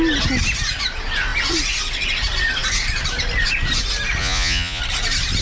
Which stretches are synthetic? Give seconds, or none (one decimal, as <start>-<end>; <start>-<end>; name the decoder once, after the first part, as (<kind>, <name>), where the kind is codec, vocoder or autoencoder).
4.2-4.8 (vocoder, Vocos)